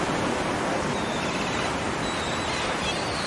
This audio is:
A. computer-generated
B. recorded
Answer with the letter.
B